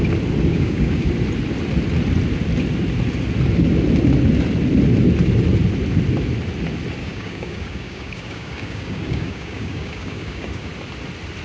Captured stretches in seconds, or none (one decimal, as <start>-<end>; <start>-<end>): 0.0-0.5; 1.1-7.0; 10.7-11.4